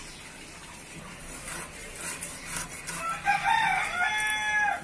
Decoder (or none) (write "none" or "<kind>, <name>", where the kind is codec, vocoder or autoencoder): none